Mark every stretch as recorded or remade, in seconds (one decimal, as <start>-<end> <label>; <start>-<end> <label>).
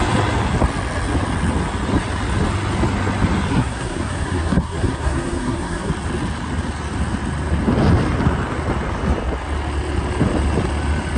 0.0-3.5 recorded; 3.5-5.9 remade; 5.9-11.2 recorded